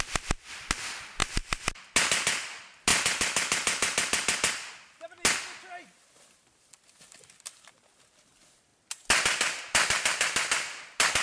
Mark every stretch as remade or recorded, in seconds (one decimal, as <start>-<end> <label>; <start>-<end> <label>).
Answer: 0.0-1.2 recorded; 1.2-1.9 remade; 1.9-11.2 recorded